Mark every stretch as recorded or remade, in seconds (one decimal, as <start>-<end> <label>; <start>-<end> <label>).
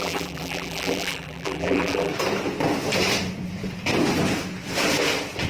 0.0-2.1 remade; 2.1-5.5 recorded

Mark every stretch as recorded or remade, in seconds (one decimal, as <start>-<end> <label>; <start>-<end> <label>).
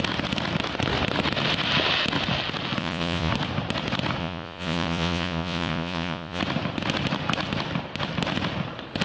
0.0-2.8 recorded; 2.8-3.3 remade; 3.3-4.2 recorded; 4.2-6.4 remade; 6.4-9.0 recorded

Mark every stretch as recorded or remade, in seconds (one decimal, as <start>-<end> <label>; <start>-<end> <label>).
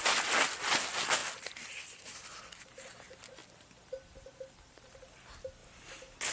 0.0-6.3 recorded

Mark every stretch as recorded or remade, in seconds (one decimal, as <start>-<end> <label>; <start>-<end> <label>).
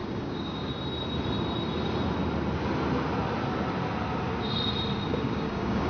0.0-0.7 remade; 0.7-5.1 recorded; 5.1-5.9 remade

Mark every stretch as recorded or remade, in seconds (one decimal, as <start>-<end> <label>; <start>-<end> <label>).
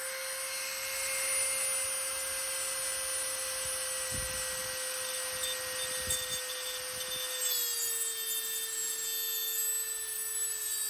0.0-10.9 recorded